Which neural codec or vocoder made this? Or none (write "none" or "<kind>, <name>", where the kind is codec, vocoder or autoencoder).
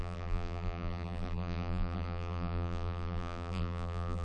vocoder, BigVGAN v2